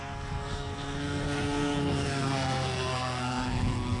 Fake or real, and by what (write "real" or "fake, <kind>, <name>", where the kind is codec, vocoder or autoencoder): fake, codec, SNAC